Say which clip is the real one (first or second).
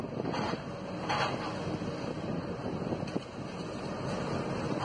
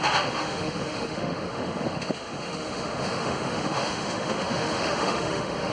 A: first